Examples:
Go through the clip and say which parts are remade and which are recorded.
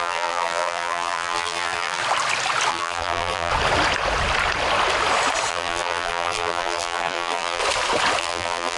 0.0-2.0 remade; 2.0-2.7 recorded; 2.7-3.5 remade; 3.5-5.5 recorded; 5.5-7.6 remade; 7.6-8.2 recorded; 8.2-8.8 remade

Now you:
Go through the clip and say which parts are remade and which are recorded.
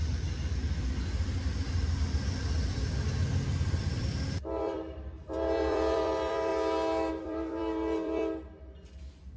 0.0-6.5 remade; 6.5-7.1 recorded; 7.1-8.2 remade; 8.2-9.0 recorded; 9.0-9.4 remade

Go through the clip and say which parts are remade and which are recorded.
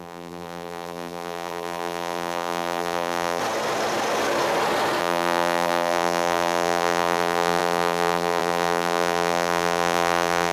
0.0-3.4 remade; 3.4-5.0 recorded; 5.0-10.5 remade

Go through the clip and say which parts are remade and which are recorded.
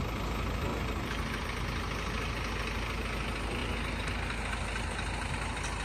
0.0-0.7 recorded; 0.7-1.6 remade; 1.6-5.8 recorded